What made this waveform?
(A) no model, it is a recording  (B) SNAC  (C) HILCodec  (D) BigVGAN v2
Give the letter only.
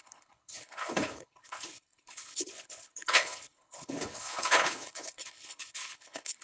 C